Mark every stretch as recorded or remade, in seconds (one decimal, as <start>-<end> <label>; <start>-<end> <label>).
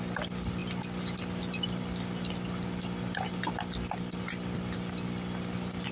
0.0-5.9 recorded